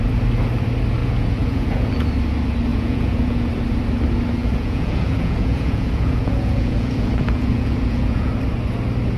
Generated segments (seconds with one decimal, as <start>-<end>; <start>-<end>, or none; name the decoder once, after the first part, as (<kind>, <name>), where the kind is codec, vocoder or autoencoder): 1.0-1.9 (vocoder, Vocos); 2.7-3.5; 4.4-8.3

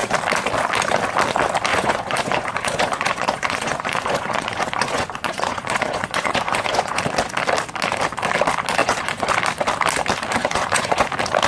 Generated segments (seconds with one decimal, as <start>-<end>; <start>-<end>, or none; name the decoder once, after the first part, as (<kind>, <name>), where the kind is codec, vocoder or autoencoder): 1.7-7.0 (vocoder, Vocos); 8.8-9.3; 10.4-11.1

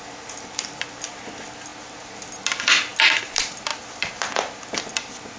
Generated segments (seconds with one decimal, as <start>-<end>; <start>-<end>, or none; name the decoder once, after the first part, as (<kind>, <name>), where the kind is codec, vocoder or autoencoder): none

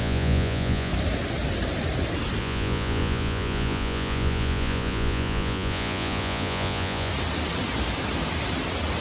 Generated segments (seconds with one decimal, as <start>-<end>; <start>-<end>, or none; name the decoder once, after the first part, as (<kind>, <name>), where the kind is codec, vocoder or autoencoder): 0.0-0.9 (vocoder, Vocos); 2.4-7.1

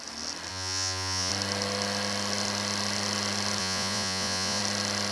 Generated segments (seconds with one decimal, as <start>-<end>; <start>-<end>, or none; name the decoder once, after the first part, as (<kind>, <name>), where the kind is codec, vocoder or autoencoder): 0.5-1.3 (vocoder, Vocos); 3.6-4.6